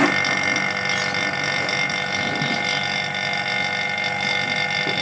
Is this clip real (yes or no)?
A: yes